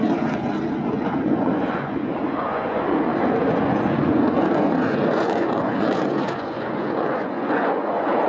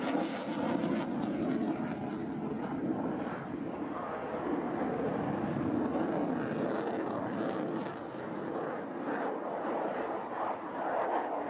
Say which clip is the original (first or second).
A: second